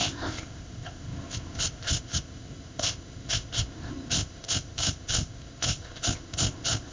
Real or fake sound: fake